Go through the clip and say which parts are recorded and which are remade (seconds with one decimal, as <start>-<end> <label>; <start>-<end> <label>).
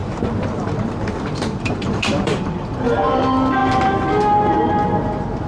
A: 0.0-3.2 remade; 3.2-5.5 recorded